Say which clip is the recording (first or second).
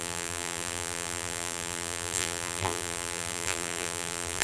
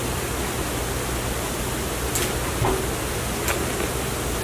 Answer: second